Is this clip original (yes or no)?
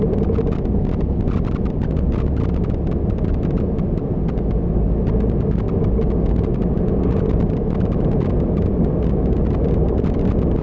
yes